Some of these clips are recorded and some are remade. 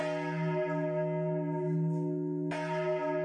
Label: recorded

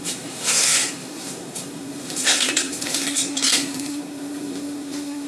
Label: remade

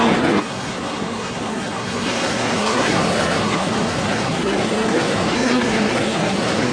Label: remade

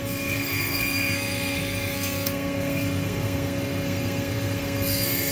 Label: remade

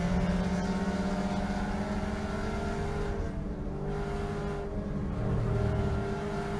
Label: recorded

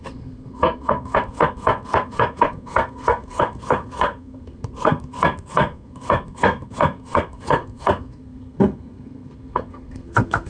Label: remade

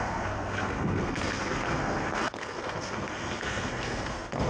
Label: remade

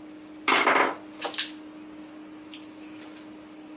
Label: recorded